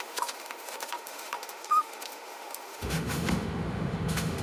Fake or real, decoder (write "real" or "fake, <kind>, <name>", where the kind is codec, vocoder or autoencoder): fake, autoencoder, DAC-VAE